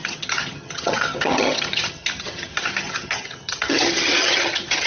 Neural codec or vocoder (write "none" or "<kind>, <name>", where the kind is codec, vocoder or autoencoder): vocoder, HiFi-GAN